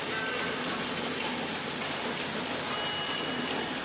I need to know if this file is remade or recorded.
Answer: recorded